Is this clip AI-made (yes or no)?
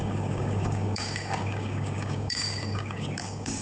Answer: yes